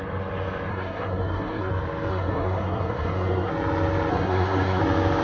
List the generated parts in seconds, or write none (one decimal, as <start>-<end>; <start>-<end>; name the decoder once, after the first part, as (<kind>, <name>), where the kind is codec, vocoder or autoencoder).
0.7-1.7 (codec, SNAC); 2.1-3.5; 4.1-4.8